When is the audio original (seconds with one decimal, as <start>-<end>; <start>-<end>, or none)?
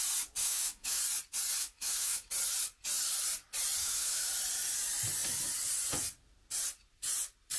0.0-0.4; 1.0-1.6; 2.3-3.8; 4.3-7.6